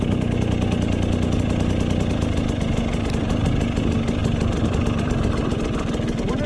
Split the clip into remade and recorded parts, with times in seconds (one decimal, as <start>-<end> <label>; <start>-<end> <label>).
0.0-6.5 recorded

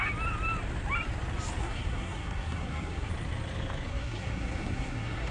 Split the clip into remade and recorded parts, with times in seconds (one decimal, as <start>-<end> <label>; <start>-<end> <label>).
0.0-1.6 recorded; 1.6-3.1 remade; 3.1-3.9 recorded; 3.9-5.3 remade

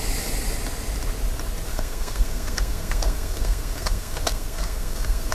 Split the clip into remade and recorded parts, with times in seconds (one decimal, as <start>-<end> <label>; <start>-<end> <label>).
0.0-1.7 recorded; 1.7-5.3 remade

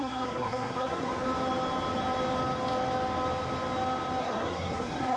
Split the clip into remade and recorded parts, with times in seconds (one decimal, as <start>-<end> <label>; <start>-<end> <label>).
0.0-1.1 remade; 1.1-4.2 recorded; 4.2-5.2 remade

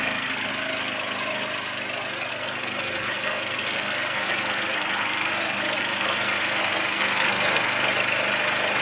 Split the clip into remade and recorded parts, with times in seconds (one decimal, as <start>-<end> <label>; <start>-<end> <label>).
0.0-0.5 remade; 0.5-2.3 recorded; 2.3-7.8 remade; 7.8-8.8 recorded

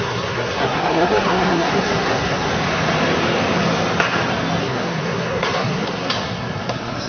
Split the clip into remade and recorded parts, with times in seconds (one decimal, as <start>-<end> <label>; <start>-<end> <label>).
0.0-2.5 remade; 2.5-4.6 recorded; 4.6-7.1 remade

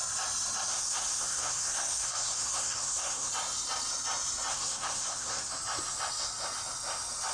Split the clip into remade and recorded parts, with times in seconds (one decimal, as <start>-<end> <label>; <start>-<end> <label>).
0.0-0.7 recorded; 0.7-3.3 remade; 3.3-4.5 recorded; 4.5-5.5 remade; 5.5-7.3 recorded

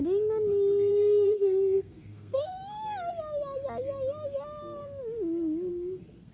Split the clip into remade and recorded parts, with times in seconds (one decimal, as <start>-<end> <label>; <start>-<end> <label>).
0.0-0.9 recorded; 0.9-2.5 remade; 2.5-5.7 recorded; 5.7-6.3 remade